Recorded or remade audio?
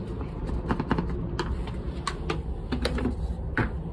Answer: recorded